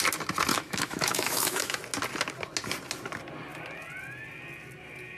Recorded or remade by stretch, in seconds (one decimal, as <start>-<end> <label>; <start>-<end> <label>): 0.0-0.5 recorded; 0.5-1.8 remade; 1.8-5.2 recorded